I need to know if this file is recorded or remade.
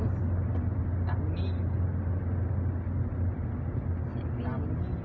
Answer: recorded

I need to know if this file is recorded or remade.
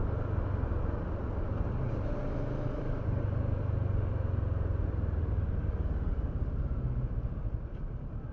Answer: recorded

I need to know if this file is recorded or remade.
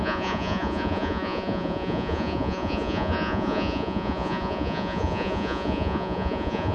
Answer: remade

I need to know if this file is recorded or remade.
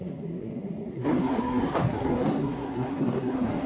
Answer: remade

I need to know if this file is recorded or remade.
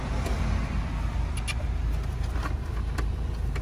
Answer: recorded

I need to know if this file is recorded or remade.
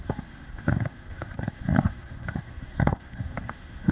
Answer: remade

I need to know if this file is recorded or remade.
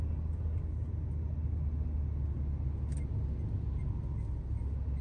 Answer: recorded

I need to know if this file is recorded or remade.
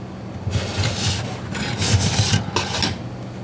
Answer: recorded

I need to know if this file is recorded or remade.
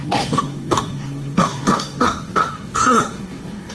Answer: remade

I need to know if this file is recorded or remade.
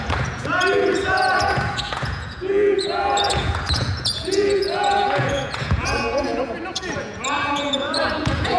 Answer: remade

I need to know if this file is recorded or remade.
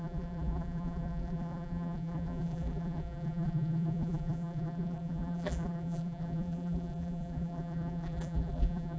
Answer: remade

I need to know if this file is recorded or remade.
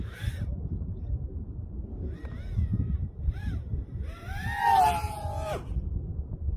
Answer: recorded